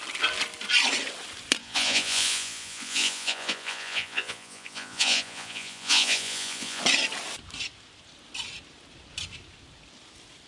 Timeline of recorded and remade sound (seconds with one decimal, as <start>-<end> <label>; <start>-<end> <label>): 0.0-1.6 recorded; 1.6-6.8 remade; 6.8-10.5 recorded